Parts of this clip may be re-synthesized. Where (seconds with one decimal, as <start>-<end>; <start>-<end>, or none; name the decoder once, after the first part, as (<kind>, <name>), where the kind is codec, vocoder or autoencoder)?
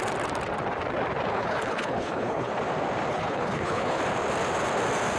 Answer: 1.3-2.5 (codec, HILCodec); 3.1-4.0